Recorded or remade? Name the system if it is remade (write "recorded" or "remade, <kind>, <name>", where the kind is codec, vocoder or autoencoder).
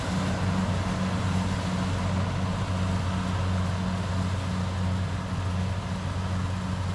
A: recorded